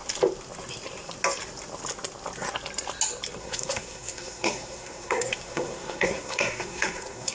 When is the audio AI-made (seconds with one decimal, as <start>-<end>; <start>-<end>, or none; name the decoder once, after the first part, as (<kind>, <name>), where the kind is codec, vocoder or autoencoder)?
3.4-7.3 (codec, SNAC)